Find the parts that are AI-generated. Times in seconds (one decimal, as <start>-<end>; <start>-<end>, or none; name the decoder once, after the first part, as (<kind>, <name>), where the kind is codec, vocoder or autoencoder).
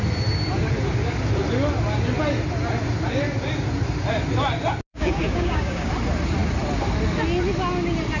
4.9-5.9 (codec, DAC)